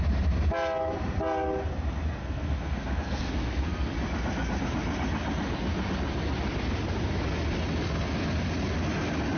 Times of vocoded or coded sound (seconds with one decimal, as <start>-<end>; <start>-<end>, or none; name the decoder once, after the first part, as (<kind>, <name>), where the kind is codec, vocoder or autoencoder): 2.2-3.9 (codec, SNAC)